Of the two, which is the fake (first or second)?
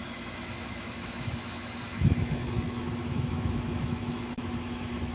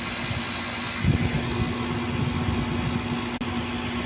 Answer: first